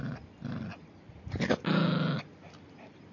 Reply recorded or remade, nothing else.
recorded